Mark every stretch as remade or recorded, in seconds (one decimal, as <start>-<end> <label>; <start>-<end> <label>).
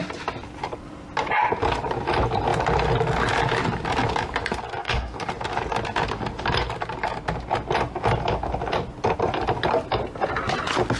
0.0-4.8 recorded; 4.8-5.3 remade; 5.3-11.0 recorded